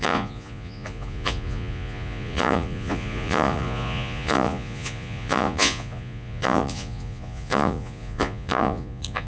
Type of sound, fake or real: fake